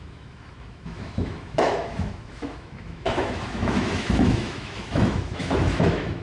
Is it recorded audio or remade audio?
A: remade